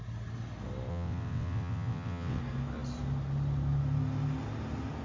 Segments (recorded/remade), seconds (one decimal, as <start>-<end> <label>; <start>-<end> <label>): 0.0-0.9 recorded; 0.9-2.4 remade; 2.4-5.0 recorded